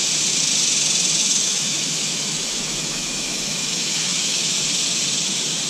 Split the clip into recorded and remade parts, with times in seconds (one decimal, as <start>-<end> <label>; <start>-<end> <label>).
0.0-1.2 recorded; 1.2-4.6 remade; 4.6-5.7 recorded